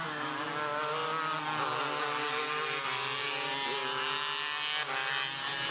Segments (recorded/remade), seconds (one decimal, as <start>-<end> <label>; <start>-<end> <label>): 0.0-5.7 recorded